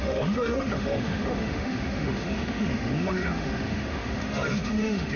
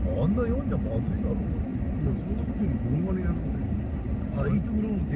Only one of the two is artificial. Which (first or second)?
first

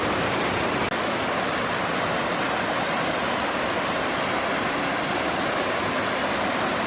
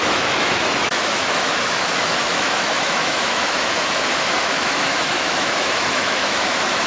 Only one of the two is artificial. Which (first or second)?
second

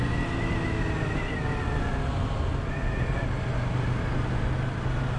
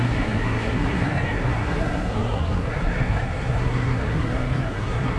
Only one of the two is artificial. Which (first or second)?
second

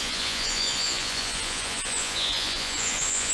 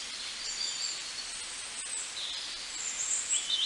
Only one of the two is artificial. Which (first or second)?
first